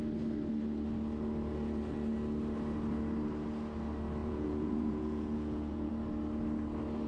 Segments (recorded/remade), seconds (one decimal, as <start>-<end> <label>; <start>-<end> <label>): 0.0-4.2 recorded; 4.2-5.9 remade; 5.9-7.1 recorded